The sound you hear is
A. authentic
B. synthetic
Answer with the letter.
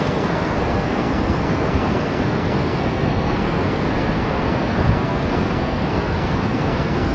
B